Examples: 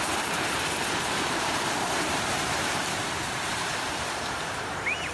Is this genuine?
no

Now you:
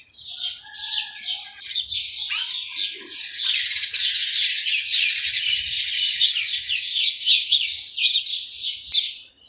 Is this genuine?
no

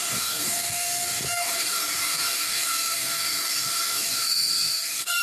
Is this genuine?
no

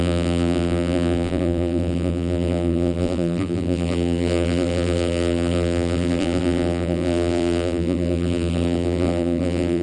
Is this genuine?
no